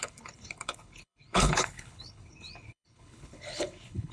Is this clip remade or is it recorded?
remade